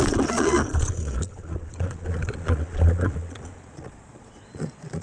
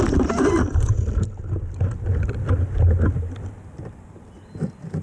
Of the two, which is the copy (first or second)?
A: first